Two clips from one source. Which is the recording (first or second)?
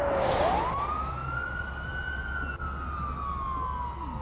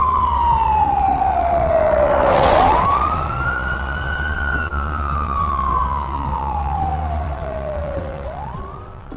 first